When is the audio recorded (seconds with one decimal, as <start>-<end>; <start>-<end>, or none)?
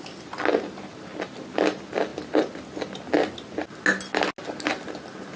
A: 0.0-5.4